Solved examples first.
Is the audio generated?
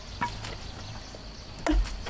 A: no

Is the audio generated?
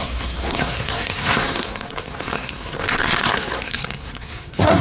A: yes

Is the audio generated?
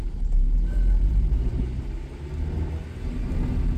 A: no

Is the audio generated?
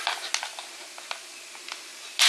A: no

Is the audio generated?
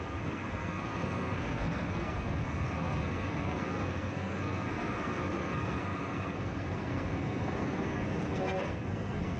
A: yes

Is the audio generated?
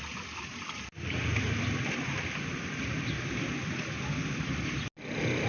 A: no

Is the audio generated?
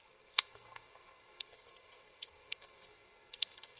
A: yes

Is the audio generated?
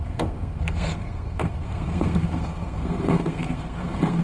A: yes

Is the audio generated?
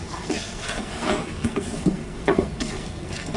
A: yes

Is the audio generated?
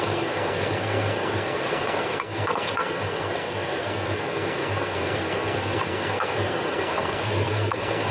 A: yes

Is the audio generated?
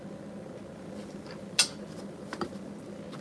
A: no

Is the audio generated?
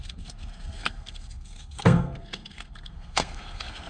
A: yes